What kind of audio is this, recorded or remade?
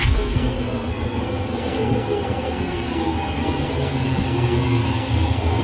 remade